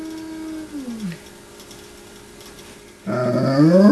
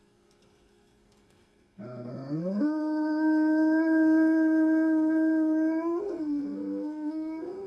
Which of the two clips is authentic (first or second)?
first